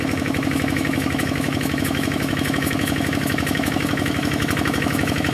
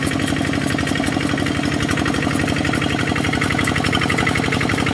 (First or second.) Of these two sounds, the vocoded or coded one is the first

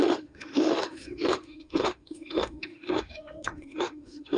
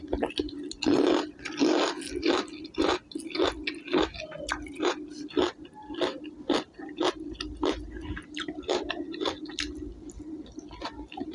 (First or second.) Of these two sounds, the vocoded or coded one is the first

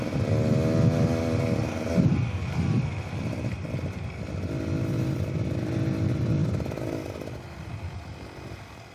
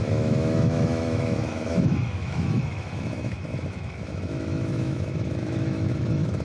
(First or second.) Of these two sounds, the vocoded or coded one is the second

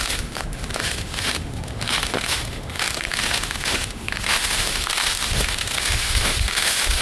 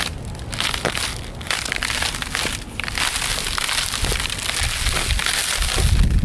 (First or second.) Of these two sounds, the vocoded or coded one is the first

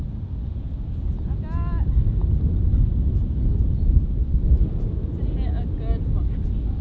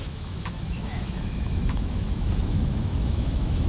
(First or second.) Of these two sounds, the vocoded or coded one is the second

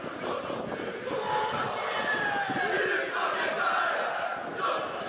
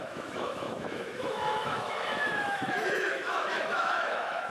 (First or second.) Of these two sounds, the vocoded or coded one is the second